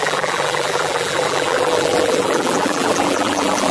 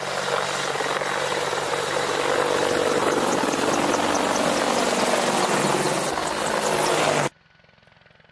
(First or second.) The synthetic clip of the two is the first